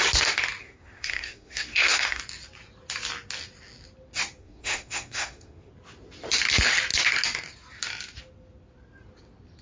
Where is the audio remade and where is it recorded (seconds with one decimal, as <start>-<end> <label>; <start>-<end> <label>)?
0.0-0.6 recorded; 0.6-2.2 remade; 2.2-4.4 recorded; 4.4-5.7 remade; 5.7-9.6 recorded